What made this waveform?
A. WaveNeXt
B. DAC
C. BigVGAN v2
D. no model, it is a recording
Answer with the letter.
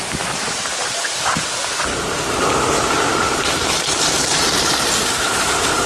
C